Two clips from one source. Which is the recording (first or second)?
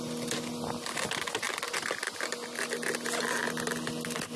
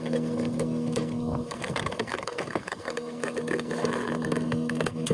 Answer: first